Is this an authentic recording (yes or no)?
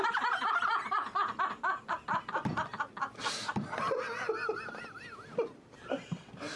no